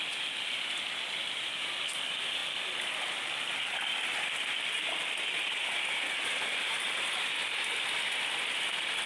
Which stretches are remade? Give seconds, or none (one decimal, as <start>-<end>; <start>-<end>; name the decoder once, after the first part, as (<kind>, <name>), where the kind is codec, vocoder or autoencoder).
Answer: none